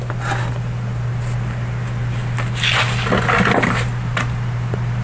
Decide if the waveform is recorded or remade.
recorded